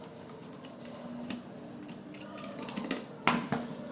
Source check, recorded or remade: recorded